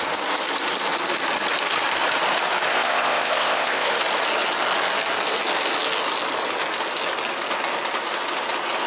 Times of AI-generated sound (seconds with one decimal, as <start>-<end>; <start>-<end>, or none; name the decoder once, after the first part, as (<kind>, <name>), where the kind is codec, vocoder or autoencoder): 2.7-3.9 (codec, ZipCodec)